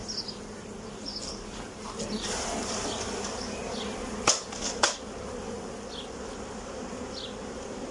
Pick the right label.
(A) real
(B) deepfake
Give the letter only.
A